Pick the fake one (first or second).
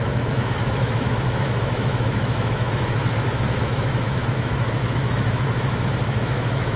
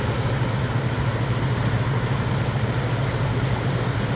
first